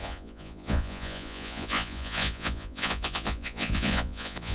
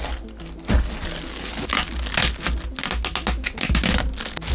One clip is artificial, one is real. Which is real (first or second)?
second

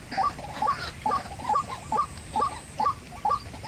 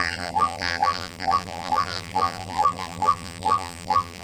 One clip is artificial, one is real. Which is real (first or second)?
first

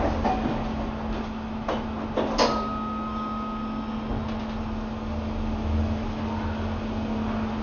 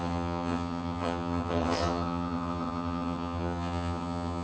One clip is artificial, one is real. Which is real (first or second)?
first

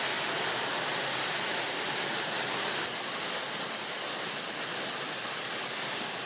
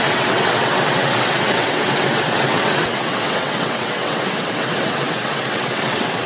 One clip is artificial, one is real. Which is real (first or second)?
first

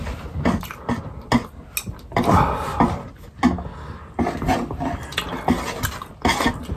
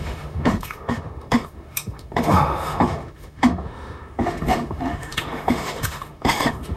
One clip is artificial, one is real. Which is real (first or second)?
first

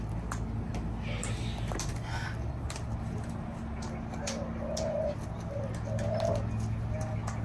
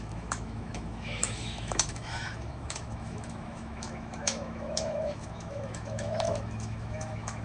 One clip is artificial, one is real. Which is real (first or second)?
first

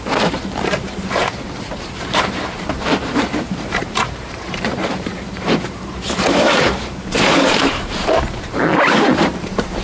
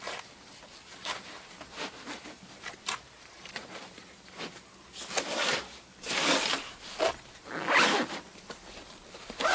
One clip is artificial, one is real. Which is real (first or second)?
second